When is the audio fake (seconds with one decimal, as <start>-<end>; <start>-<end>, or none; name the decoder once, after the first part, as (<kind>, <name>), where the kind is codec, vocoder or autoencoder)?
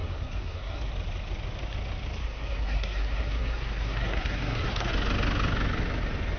0.0-0.9 (codec, SNAC); 2.2-4.9